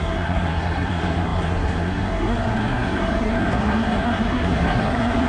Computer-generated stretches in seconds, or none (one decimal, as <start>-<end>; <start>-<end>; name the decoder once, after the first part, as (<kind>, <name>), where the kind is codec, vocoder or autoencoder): 0.0-5.3 (codec, SNAC)